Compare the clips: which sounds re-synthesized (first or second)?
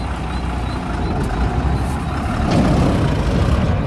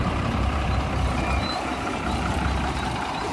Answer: second